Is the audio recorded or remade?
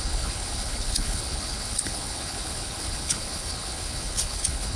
remade